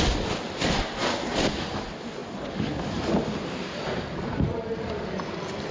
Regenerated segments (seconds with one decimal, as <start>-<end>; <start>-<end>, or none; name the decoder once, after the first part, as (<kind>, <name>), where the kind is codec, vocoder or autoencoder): none